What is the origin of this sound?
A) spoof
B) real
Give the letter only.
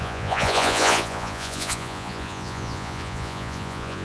A